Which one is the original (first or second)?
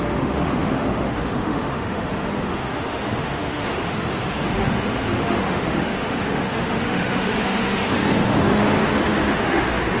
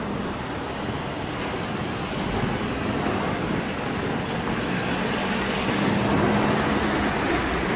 second